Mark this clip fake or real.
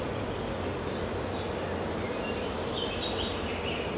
real